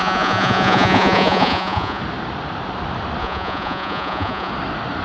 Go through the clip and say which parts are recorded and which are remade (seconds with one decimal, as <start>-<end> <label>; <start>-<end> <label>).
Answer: 0.0-2.0 remade; 2.0-3.2 recorded; 3.2-4.5 remade; 4.5-5.0 recorded